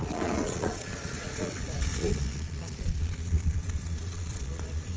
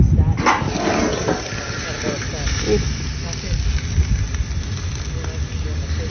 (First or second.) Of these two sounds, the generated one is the first